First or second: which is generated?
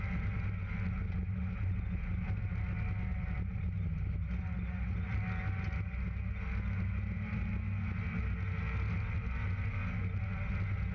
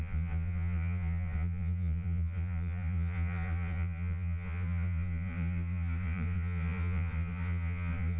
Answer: second